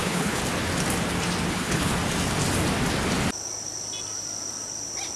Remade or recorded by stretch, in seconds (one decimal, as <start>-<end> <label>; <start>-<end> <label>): 0.0-0.4 remade; 0.4-1.5 recorded; 1.5-1.9 remade; 1.9-5.2 recorded